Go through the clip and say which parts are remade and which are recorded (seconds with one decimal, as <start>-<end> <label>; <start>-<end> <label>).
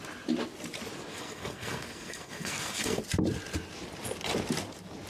0.0-1.1 recorded; 1.1-3.0 remade; 3.0-5.1 recorded